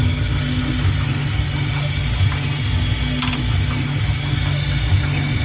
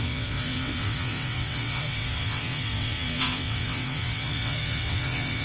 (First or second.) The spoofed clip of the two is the second